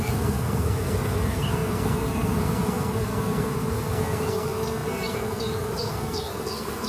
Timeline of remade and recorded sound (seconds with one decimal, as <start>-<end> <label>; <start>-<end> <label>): 0.0-6.9 remade